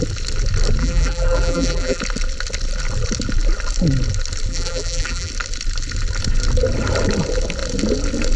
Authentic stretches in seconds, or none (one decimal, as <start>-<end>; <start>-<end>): 0.0-0.8; 2.0-4.5; 5.3-8.4